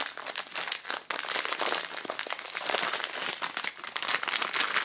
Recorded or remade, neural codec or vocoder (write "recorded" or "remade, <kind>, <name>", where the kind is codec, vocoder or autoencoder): recorded